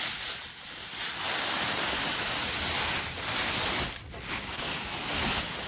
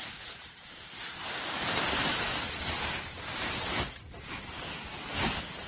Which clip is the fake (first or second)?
second